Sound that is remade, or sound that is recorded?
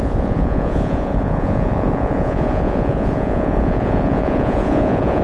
remade